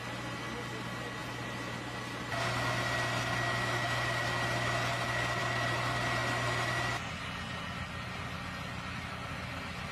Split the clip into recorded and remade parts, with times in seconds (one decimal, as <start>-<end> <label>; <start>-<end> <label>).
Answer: 0.0-9.9 recorded